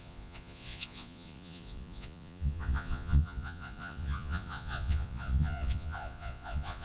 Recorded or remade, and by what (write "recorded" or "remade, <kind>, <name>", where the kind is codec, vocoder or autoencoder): remade, vocoder, Vocos